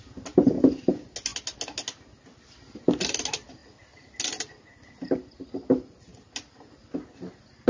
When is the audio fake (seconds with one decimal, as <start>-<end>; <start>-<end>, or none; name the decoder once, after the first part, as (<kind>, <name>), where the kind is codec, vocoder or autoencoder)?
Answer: none